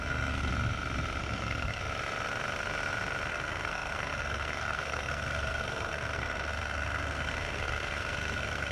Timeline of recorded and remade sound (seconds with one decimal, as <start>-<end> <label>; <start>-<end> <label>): 0.0-0.5 remade; 0.5-1.2 recorded; 1.2-1.8 remade; 1.8-3.3 recorded; 3.3-8.7 remade